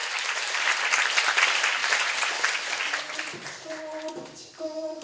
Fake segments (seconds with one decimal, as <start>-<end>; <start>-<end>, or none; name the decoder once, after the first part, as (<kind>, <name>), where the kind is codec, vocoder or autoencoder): 0.0-0.7 (vocoder, BigVGAN v2); 1.8-2.7; 3.3-3.8